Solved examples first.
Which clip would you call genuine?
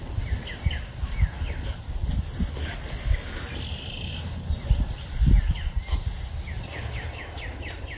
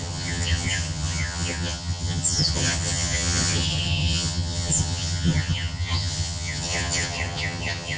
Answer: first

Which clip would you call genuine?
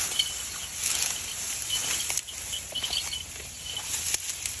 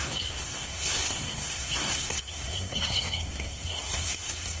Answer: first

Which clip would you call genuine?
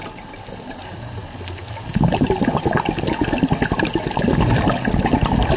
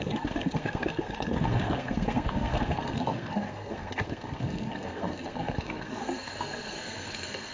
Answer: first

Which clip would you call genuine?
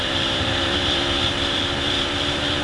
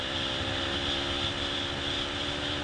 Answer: second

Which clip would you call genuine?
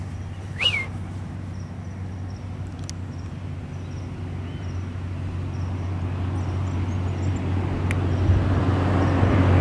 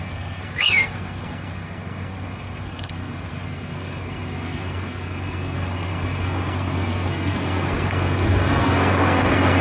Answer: first